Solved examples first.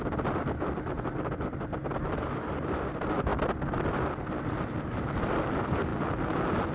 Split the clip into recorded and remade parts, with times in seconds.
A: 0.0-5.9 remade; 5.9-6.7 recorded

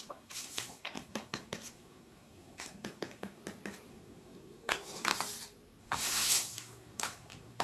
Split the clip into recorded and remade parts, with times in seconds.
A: 0.0-3.4 remade; 3.4-3.9 recorded; 3.9-5.1 remade; 5.1-5.8 recorded; 5.8-7.6 remade

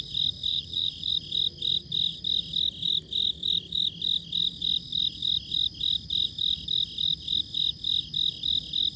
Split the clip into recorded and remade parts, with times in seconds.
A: 0.0-0.5 recorded; 0.5-1.1 remade; 1.1-9.0 recorded

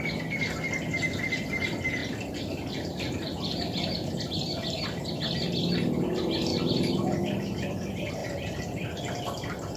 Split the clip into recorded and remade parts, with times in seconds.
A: 0.0-2.0 recorded; 2.0-4.1 remade; 4.1-6.5 recorded; 6.5-7.2 remade; 7.2-8.2 recorded; 8.2-9.0 remade; 9.0-9.8 recorded

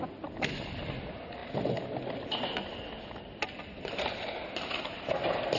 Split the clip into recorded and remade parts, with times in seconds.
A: 0.0-5.6 recorded

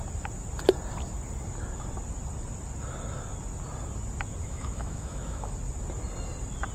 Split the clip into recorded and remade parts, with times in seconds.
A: 0.0-4.4 recorded; 4.4-5.5 remade; 5.5-6.7 recorded